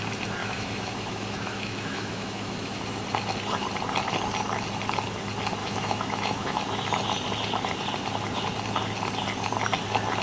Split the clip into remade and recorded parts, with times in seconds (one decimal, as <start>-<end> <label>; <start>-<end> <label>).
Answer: 0.0-0.4 recorded; 0.4-2.8 remade; 2.8-5.6 recorded; 5.6-6.6 remade; 6.6-10.2 recorded